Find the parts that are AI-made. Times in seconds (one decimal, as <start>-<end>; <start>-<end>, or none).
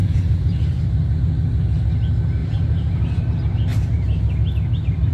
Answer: 0.0-1.2; 2.4-3.2; 3.7-4.2